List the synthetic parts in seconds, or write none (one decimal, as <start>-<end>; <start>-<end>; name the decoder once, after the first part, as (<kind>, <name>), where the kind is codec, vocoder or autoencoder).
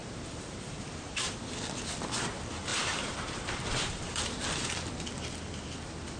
0.0-1.3 (vocoder, BigVGAN v2); 2.7-4.5